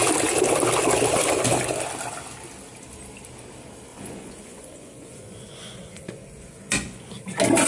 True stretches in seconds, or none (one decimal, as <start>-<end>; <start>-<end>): 0.0-3.9; 7.1-7.7